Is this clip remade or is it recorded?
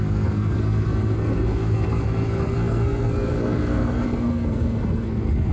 remade